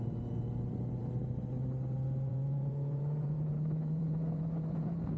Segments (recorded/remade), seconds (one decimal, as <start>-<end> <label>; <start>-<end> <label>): 0.0-2.3 recorded; 2.3-5.2 remade